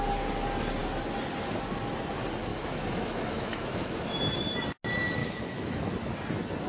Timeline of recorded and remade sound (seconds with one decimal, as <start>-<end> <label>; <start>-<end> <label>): 0.0-2.5 recorded; 2.5-4.2 remade; 4.2-5.2 recorded; 5.2-5.9 remade; 5.9-6.7 recorded